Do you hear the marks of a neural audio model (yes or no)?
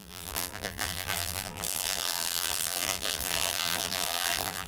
yes